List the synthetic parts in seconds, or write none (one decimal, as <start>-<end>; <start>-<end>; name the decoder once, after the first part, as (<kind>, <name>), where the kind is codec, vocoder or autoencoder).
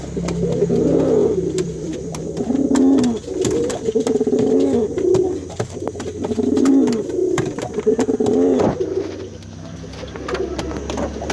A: 1.2-2.6 (vocoder, BigVGAN v2); 6.1-6.7; 7.2-8.7